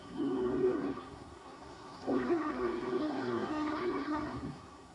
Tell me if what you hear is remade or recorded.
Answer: remade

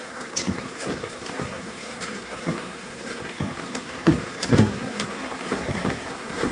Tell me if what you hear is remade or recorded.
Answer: remade